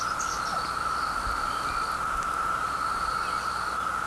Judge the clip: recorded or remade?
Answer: recorded